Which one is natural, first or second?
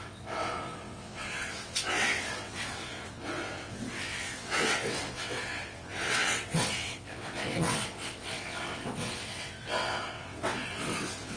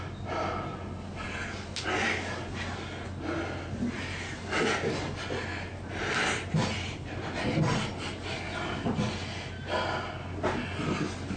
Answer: second